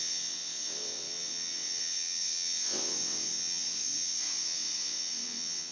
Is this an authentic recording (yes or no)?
no